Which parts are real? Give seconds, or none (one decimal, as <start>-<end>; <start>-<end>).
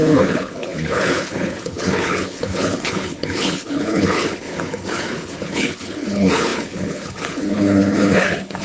none